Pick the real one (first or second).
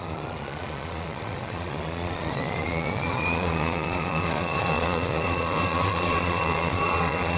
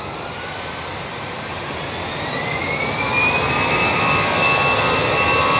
second